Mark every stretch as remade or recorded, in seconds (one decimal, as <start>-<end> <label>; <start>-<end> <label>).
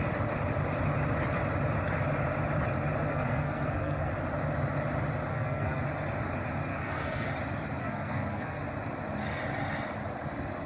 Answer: 0.0-3.1 recorded; 3.1-4.1 remade; 4.1-5.3 recorded; 5.3-5.8 remade; 5.8-6.7 recorded; 6.7-7.3 remade; 7.3-7.8 recorded; 7.8-8.6 remade; 8.6-10.7 recorded